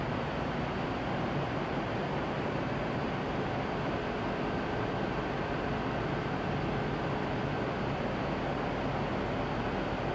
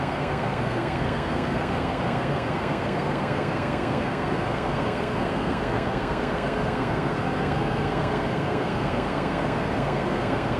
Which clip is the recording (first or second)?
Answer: first